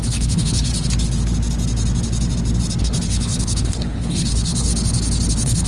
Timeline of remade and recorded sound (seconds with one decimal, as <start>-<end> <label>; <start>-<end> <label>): 0.0-0.7 remade; 0.7-2.8 recorded; 2.8-4.7 remade; 4.7-5.3 recorded; 5.3-5.7 remade